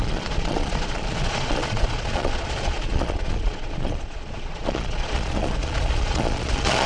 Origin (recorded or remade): remade